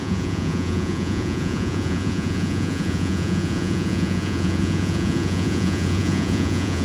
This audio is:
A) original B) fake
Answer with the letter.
B